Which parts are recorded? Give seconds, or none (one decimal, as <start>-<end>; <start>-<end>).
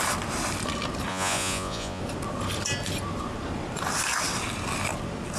0.0-1.1; 2.0-5.4